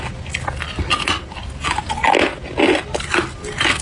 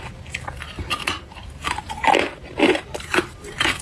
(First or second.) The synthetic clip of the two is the second